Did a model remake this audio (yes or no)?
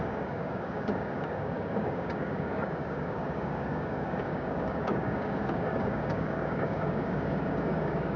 yes